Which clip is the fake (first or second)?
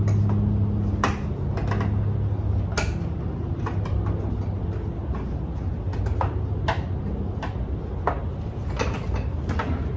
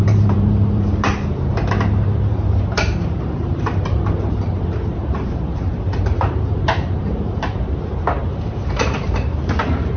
second